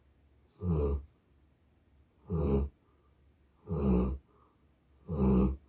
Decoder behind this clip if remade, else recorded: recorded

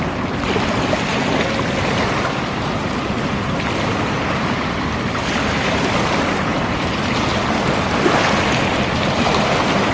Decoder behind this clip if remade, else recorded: recorded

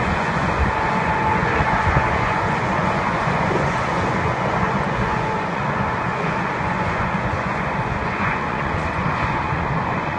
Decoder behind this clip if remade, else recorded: remade, vocoder, Vocos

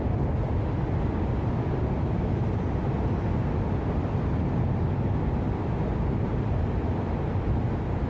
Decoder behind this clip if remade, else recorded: recorded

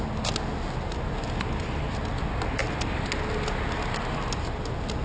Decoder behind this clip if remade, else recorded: recorded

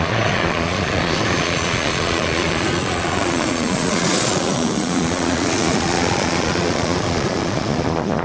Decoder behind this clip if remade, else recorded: remade, vocoder, Vocos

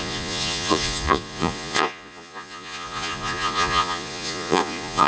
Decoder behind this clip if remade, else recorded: remade, vocoder, Vocos